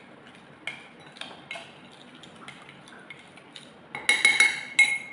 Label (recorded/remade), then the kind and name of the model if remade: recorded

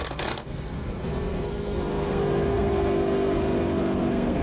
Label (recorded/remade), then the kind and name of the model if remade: remade, codec, SNAC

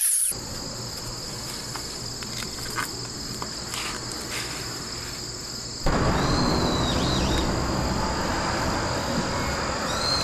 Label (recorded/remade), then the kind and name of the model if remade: recorded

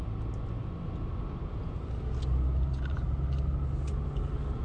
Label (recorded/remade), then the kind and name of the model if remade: recorded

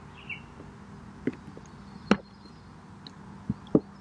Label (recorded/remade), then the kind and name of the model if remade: recorded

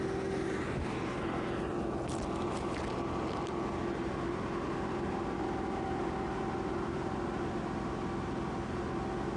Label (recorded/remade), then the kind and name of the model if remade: recorded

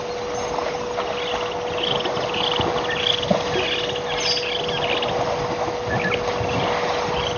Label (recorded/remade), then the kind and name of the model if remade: recorded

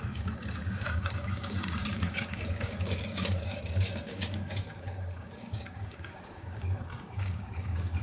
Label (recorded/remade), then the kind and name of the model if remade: remade, codec, DAC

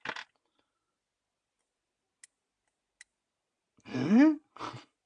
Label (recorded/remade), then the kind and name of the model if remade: recorded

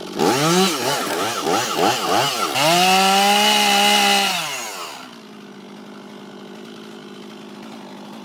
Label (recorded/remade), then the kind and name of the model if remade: recorded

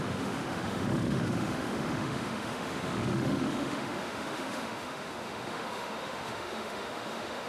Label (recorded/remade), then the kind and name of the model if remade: remade, autoencoder, DAC-VAE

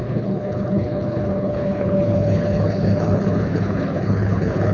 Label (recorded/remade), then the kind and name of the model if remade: remade, codec, HILCodec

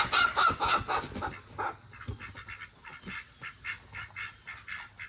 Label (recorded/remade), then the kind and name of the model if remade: recorded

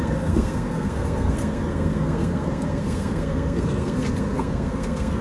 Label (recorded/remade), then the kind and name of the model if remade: remade, codec, SNAC